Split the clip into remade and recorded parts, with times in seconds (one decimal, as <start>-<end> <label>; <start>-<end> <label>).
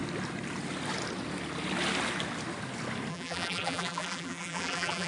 0.0-3.1 recorded; 3.1-5.1 remade